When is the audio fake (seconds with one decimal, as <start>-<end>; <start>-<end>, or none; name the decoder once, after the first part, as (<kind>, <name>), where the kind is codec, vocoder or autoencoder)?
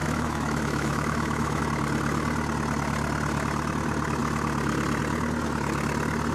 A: 0.0-1.6 (autoencoder, DAC-VAE)